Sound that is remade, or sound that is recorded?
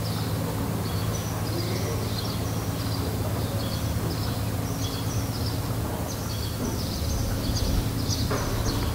recorded